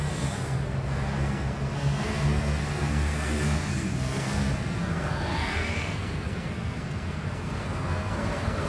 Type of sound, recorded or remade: remade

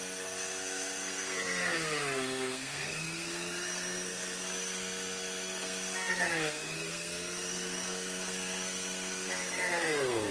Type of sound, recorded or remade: remade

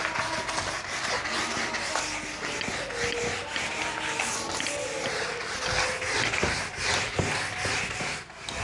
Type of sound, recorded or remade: recorded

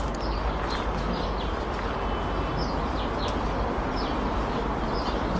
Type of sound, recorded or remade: recorded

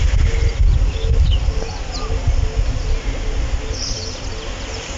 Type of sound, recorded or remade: recorded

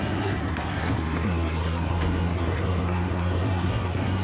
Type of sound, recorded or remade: remade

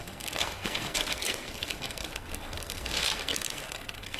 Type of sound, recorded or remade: remade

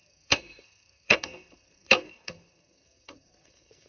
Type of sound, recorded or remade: remade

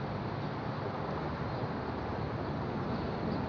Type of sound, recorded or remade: recorded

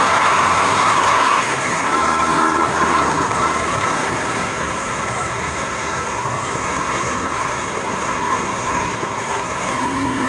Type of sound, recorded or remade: remade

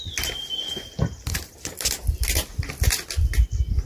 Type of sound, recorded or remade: recorded